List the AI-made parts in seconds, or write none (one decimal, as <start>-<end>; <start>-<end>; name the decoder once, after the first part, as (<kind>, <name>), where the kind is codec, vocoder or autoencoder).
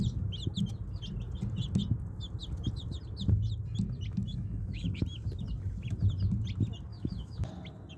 4.3-5.0 (autoencoder, DAC-VAE); 6.9-7.5